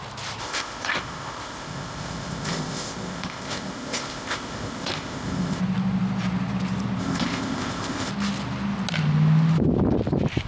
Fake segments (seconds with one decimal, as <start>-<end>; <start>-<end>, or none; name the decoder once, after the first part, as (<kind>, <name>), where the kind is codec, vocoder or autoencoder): 0.4-5.6 (codec, ZipCodec); 7.0-8.1